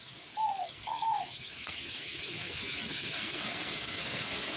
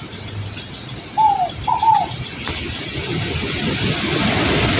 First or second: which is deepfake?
first